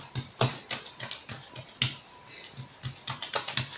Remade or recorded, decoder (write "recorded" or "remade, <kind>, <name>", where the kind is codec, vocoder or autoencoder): recorded